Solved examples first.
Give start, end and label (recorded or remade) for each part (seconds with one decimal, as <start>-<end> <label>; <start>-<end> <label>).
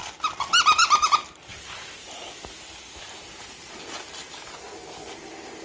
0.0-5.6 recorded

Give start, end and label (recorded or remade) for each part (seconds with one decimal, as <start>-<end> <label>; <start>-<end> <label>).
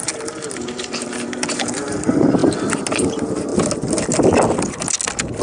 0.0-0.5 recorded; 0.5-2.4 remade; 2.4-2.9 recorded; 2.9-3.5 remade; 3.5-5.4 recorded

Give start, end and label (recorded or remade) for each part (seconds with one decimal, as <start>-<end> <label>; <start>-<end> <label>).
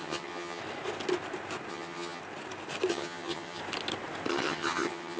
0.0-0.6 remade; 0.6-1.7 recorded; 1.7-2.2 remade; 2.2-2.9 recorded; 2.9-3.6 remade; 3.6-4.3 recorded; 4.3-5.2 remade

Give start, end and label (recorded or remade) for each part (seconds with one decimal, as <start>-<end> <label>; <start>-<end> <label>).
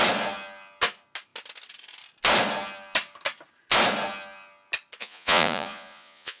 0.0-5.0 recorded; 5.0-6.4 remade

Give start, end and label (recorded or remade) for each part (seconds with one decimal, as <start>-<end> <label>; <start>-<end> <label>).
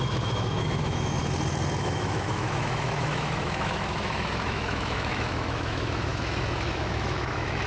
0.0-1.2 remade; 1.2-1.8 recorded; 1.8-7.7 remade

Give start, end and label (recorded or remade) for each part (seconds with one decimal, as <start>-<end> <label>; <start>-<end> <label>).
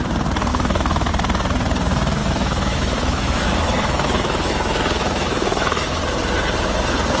0.0-0.5 recorded; 0.5-1.1 remade; 1.1-2.2 recorded; 2.2-6.0 remade; 6.0-7.2 recorded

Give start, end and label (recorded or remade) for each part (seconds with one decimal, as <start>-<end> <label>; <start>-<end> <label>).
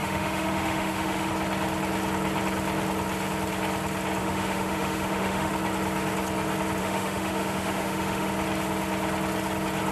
0.0-1.3 remade; 1.3-4.2 recorded; 4.2-5.5 remade; 5.5-6.8 recorded; 6.8-8.3 remade; 8.3-9.9 recorded